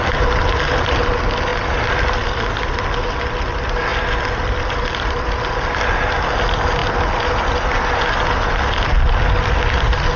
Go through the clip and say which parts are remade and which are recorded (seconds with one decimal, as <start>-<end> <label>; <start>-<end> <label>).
0.0-10.2 recorded

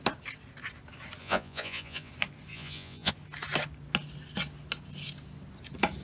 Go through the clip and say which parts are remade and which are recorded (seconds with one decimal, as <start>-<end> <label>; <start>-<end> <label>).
0.0-1.2 recorded; 1.2-2.1 remade; 2.1-2.5 recorded; 2.5-3.1 remade; 3.1-6.0 recorded

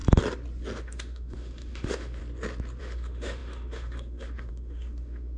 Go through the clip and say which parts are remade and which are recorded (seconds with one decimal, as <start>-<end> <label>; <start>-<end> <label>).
0.0-0.8 recorded; 0.8-2.2 remade; 2.2-2.8 recorded; 2.8-5.4 remade

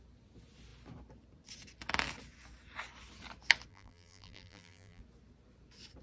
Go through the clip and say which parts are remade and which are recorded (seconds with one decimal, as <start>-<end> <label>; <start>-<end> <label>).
0.0-3.7 recorded; 3.7-5.0 remade; 5.0-6.0 recorded

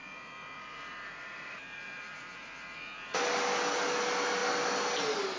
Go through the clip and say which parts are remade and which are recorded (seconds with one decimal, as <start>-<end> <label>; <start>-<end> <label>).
0.0-3.2 remade; 3.2-5.4 recorded